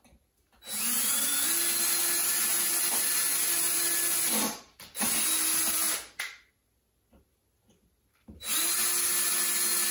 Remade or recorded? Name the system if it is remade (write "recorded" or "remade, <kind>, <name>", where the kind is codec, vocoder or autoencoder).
recorded